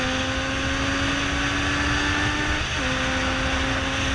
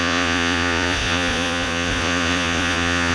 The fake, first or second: second